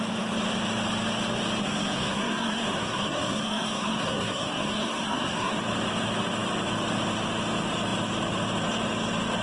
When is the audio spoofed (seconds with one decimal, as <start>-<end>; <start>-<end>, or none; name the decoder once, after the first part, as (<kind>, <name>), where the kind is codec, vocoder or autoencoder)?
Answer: 1.6-5.6 (codec, SNAC)